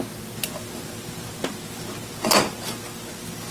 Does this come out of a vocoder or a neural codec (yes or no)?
no